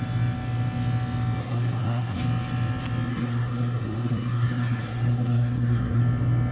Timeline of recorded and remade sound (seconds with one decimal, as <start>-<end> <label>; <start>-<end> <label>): 0.0-1.4 recorded; 1.4-2.2 remade; 2.2-3.1 recorded; 3.1-6.0 remade; 6.0-6.5 recorded